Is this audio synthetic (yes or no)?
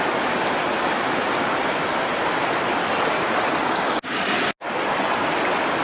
no